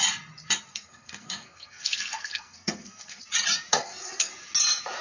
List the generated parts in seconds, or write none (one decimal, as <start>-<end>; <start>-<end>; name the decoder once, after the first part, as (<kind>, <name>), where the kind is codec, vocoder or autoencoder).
0.7-3.2 (codec, SNAC); 3.7-4.3